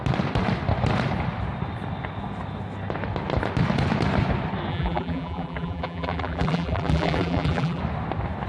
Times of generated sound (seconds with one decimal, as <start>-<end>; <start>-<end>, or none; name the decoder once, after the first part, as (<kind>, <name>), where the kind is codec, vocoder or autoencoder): 4.7-7.8 (vocoder, BigVGAN v2)